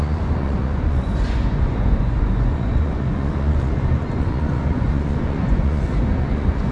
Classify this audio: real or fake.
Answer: fake